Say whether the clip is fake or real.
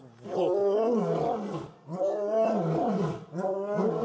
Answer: real